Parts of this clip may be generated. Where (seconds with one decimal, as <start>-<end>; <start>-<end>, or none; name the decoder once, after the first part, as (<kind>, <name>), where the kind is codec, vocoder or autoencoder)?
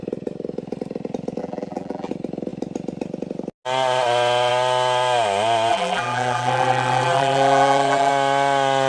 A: 1.4-2.1 (vocoder, BigVGAN v2); 5.7-8.1